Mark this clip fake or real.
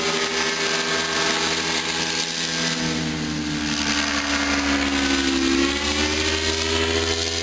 real